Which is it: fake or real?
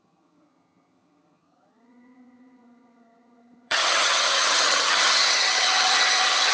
fake